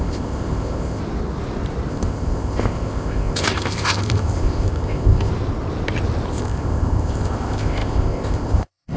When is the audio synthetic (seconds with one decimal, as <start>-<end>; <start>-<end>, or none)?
0.0-1.0; 1.9-5.3; 6.3-9.0

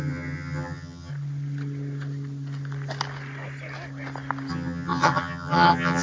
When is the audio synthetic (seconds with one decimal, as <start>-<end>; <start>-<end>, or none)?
0.0-1.1; 4.5-6.0

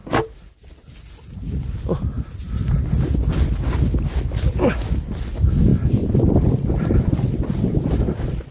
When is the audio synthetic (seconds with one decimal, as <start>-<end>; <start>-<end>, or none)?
none

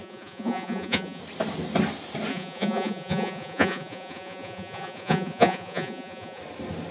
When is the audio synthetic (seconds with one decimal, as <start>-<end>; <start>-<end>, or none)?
0.0-1.2; 2.3-6.4